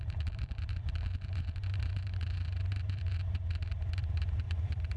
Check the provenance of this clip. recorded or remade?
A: remade